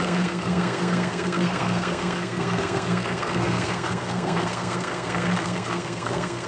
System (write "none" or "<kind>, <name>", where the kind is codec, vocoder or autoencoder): codec, SNAC